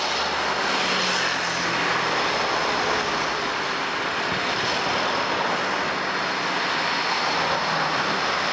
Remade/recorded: recorded